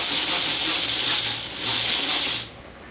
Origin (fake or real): real